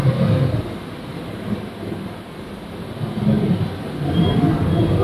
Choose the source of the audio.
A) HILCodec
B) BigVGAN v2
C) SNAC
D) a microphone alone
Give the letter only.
D